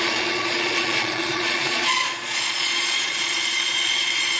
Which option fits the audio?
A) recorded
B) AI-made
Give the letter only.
B